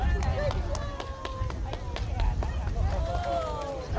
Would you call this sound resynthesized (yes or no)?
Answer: no